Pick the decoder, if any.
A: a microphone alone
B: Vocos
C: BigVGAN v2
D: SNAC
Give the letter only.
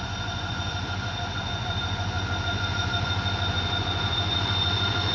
B